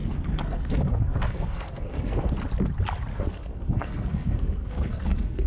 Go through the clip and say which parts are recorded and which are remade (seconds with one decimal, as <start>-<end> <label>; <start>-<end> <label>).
0.0-2.4 remade; 2.4-3.1 recorded; 3.1-5.5 remade